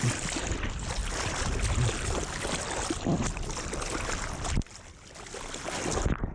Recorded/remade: recorded